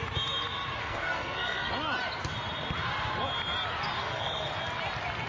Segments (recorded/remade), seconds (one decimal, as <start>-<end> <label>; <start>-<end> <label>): 0.0-0.8 recorded; 0.8-1.7 remade; 1.7-4.0 recorded; 4.0-4.5 remade; 4.5-5.3 recorded